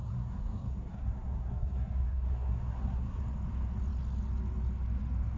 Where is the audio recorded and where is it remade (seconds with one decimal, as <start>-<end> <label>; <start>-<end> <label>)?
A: 0.0-3.2 remade; 3.2-5.4 recorded